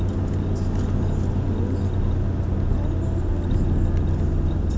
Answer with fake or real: real